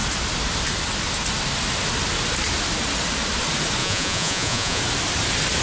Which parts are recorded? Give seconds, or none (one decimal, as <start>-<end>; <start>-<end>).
0.0-3.8; 4.8-5.6